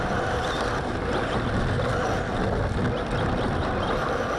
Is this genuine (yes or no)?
yes